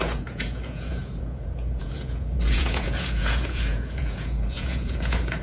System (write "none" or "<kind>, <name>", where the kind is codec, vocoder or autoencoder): vocoder, Vocos